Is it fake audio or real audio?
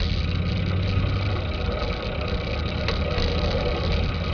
real